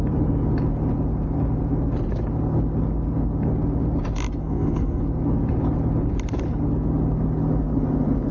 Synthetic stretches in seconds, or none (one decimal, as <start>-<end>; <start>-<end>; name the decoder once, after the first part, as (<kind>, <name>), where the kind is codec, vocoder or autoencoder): 4.4-5.0 (codec, SNAC)